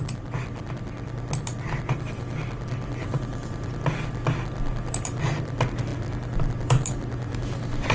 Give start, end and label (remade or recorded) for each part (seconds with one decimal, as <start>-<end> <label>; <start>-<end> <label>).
0.0-7.9 recorded